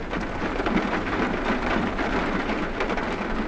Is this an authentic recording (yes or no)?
yes